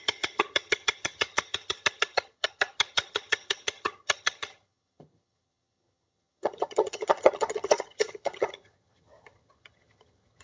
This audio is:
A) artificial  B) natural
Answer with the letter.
A